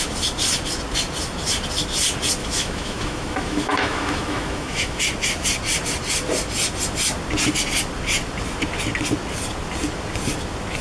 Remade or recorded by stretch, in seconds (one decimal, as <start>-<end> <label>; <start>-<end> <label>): 0.0-2.4 recorded; 2.4-5.0 remade; 5.0-10.8 recorded